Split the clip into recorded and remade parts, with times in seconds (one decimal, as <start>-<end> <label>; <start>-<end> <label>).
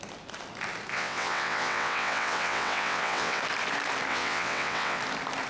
0.0-0.9 recorded; 0.9-3.4 remade; 3.4-4.1 recorded; 4.1-5.0 remade; 5.0-5.5 recorded